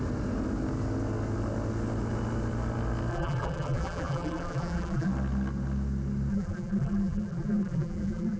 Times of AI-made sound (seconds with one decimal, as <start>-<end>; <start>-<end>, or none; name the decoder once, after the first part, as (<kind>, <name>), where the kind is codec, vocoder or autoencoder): 3.1-5.1 (vocoder, BigVGAN v2); 6.3-8.4